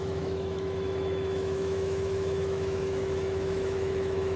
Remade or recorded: remade